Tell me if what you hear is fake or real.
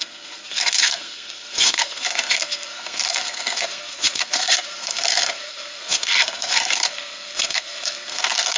fake